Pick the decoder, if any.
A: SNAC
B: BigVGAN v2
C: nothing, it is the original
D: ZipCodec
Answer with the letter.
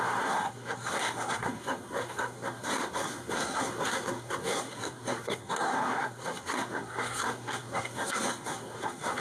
A